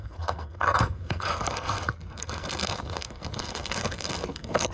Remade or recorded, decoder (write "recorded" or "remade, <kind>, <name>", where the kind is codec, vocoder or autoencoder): remade, codec, SNAC